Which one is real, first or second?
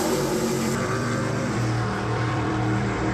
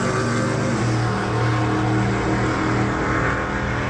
second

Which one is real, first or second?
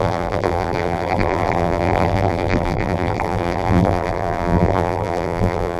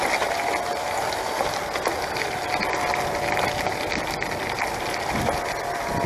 second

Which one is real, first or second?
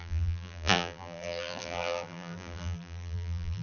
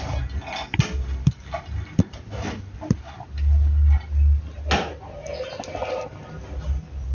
second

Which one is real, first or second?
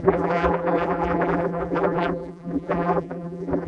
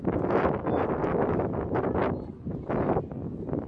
second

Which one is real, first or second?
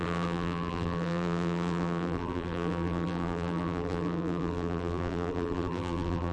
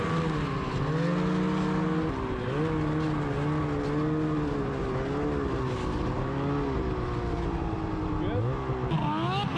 second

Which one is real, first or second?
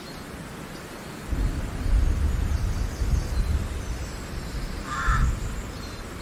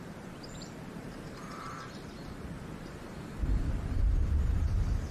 first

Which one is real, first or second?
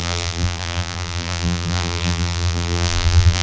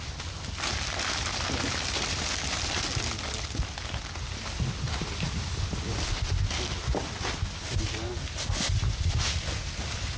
second